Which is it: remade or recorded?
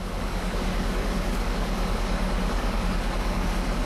remade